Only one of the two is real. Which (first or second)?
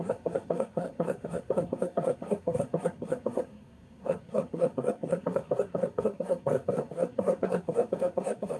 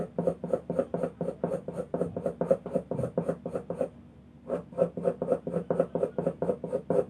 second